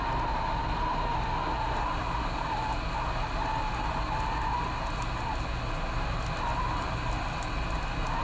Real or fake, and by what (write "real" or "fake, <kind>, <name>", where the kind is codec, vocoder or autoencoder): real